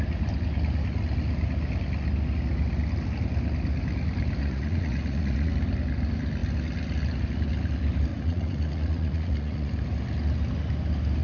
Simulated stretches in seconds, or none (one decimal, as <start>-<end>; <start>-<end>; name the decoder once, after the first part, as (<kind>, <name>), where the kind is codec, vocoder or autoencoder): 4.4-5.5 (vocoder, Vocos); 8.1-9.7